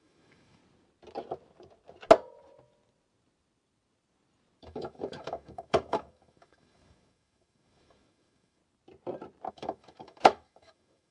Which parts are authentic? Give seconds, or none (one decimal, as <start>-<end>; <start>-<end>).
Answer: 0.6-4.6; 8.6-9.5